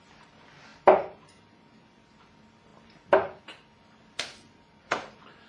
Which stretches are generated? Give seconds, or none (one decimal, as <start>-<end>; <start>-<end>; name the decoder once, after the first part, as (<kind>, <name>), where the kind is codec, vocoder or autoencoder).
0.0-5.5 (vocoder, BigVGAN v2)